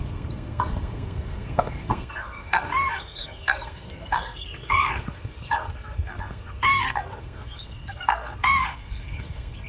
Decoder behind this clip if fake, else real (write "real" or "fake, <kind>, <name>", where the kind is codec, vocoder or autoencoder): fake, codec, SNAC